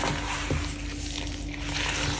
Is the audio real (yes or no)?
yes